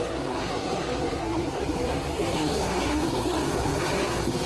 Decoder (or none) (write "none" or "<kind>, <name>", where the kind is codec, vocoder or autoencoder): codec, SNAC